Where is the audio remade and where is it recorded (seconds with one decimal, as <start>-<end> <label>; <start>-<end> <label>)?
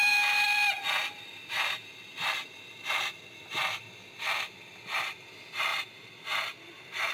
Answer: 0.0-0.8 recorded; 0.8-7.1 remade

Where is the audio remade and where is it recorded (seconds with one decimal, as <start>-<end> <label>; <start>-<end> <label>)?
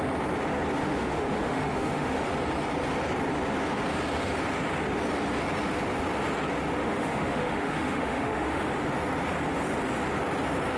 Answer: 0.0-0.8 recorded; 0.8-2.3 remade; 2.3-6.8 recorded; 6.8-8.6 remade; 8.6-10.8 recorded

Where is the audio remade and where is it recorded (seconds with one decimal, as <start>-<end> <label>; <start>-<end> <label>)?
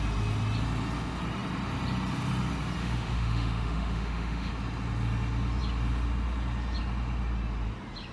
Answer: 0.0-2.8 recorded; 2.8-4.5 remade; 4.5-8.1 recorded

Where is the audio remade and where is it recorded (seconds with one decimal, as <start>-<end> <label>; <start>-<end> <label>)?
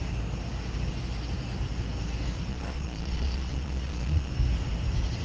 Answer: 0.0-2.5 recorded; 2.5-4.3 remade; 4.3-5.2 recorded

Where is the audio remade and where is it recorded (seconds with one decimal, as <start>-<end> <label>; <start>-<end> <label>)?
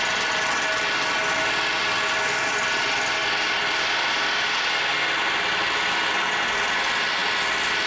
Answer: 0.0-7.9 recorded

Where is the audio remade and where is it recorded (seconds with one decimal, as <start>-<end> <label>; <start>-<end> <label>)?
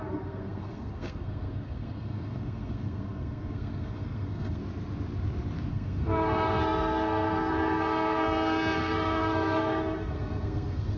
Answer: 0.0-4.6 remade; 4.6-5.7 recorded; 5.7-11.0 remade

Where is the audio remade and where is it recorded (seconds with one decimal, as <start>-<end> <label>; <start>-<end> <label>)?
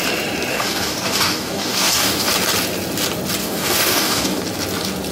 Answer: 0.0-0.5 recorded; 0.5-2.3 remade; 2.3-3.4 recorded; 3.4-4.4 remade; 4.4-5.1 recorded